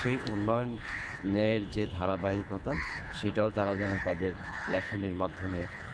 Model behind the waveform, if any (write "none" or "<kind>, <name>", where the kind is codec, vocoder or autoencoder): codec, HILCodec